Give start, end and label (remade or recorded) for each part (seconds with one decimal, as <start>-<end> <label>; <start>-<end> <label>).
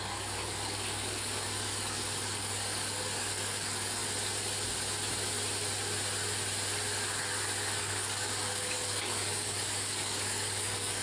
0.0-4.0 remade; 4.0-7.8 recorded; 7.8-11.0 remade